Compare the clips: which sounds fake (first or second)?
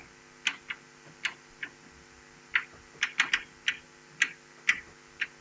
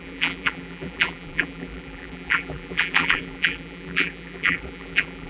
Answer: second